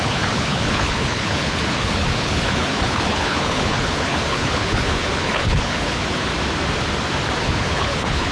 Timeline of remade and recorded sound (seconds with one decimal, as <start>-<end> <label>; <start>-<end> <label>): 0.0-6.3 remade; 6.3-7.4 recorded; 7.4-8.3 remade